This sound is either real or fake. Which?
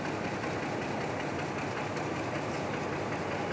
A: real